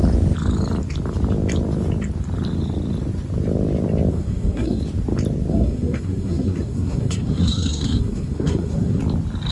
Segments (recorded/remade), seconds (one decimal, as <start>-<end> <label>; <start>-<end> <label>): 0.0-4.1 recorded; 4.1-4.8 remade; 4.8-5.5 recorded; 5.5-9.0 remade; 9.0-9.5 recorded